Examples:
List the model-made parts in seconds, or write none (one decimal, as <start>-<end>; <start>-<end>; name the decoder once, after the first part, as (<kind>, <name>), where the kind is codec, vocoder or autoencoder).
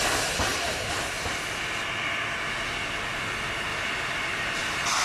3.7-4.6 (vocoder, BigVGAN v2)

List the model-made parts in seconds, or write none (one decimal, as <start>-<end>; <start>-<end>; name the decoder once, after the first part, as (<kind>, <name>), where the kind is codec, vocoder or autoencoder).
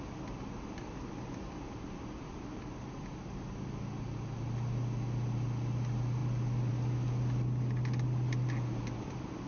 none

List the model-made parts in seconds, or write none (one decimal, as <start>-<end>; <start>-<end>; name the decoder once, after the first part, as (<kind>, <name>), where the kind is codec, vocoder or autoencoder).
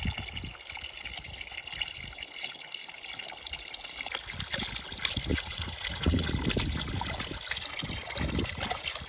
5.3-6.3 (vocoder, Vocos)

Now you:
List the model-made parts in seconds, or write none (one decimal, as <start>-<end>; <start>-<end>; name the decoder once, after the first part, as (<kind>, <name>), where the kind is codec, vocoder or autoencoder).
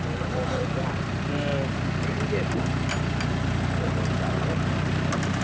0.0-1.5 (vocoder, BigVGAN v2); 4.7-5.4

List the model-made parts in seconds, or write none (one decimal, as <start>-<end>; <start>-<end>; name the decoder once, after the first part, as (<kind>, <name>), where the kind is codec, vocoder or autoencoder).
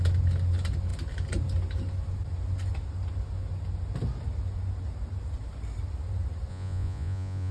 6.5-7.5 (vocoder, Vocos)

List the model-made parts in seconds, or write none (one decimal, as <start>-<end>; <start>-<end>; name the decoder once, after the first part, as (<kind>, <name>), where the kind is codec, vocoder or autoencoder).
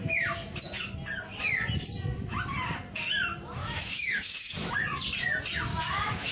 3.6-4.7 (autoencoder, DAC-VAE); 5.7-6.3